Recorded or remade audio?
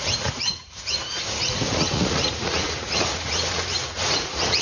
remade